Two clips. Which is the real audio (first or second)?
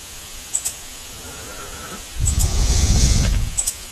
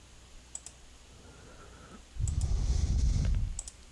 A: second